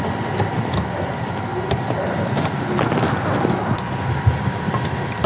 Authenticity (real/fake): real